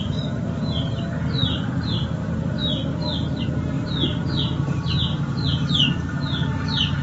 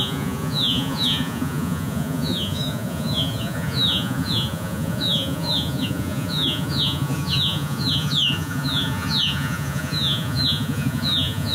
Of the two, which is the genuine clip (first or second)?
first